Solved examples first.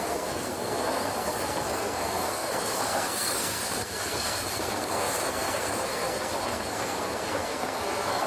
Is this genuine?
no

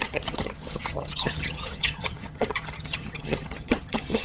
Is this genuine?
no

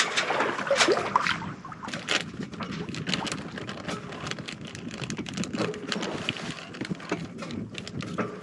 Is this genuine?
yes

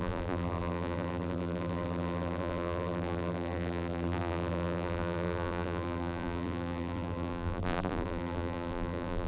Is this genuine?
no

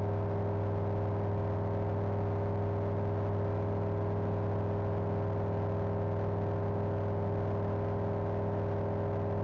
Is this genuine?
yes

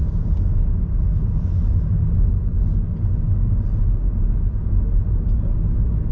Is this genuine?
yes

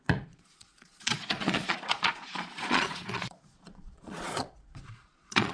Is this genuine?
no